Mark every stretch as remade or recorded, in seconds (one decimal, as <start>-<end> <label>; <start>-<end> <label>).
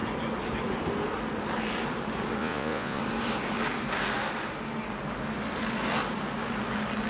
0.0-2.4 recorded; 2.4-3.0 remade; 3.0-7.1 recorded